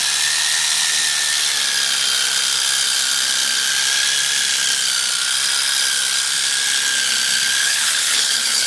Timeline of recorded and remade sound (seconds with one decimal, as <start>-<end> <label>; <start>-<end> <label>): 0.0-7.6 recorded; 7.6-8.7 remade